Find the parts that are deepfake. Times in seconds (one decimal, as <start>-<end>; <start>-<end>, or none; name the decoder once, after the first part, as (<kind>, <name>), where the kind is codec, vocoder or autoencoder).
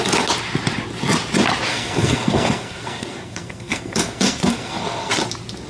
1.7-5.1 (codec, SNAC)